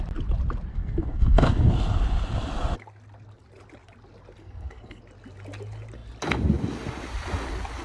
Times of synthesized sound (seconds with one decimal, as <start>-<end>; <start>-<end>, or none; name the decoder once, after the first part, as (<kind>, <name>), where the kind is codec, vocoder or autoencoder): 0.7-1.7 (codec, SNAC); 4.4-5.0